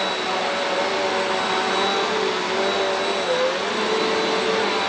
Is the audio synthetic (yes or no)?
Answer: no